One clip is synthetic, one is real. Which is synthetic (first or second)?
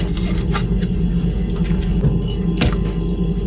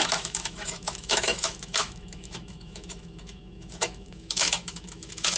second